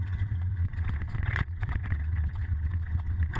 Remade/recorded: remade